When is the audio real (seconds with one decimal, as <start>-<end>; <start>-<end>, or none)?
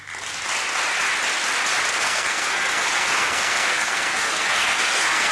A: 0.0-1.9